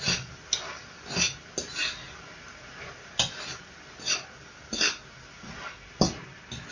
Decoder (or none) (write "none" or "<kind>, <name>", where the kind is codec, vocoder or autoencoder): none